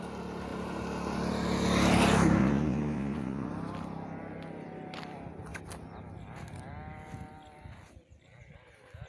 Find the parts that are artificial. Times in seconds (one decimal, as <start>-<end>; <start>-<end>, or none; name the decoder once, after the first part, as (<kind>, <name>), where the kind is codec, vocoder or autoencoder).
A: 2.4-3.5 (vocoder, Vocos)